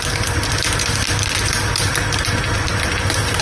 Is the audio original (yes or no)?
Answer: yes